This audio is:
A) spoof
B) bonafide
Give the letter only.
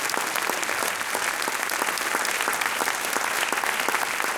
B